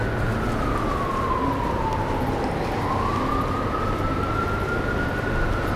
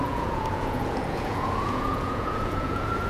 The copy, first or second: second